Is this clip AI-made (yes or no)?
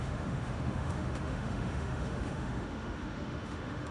yes